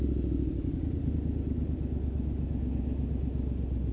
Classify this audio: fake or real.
real